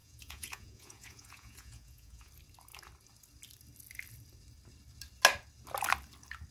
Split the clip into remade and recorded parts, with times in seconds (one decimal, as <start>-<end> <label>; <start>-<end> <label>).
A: 0.0-2.3 remade; 2.3-6.5 recorded